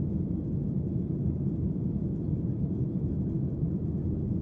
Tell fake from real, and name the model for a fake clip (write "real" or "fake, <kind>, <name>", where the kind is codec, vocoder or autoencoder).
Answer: real